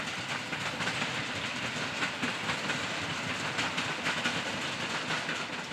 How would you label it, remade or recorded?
recorded